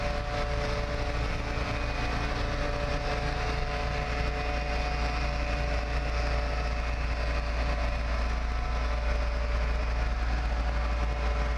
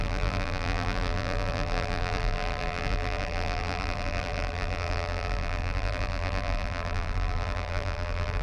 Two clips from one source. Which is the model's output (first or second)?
second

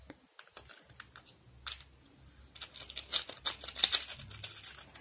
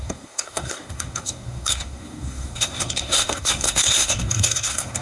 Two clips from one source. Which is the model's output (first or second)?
second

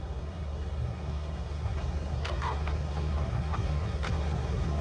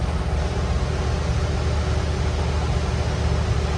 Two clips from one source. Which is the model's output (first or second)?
first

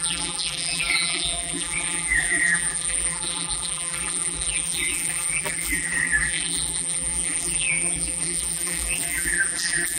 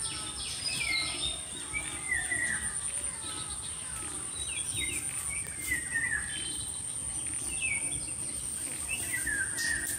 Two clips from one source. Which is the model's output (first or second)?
first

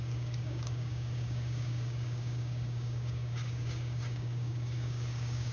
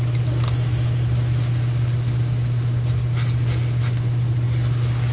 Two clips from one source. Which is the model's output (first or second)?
first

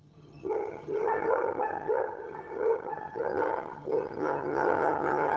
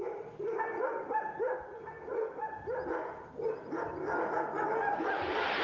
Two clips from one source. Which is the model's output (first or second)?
first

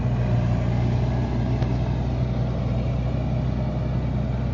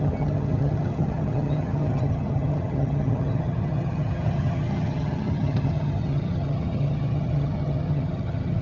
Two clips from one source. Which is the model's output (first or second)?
second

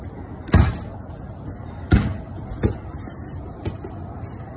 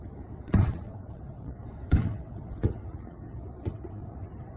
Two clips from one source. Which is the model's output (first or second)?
second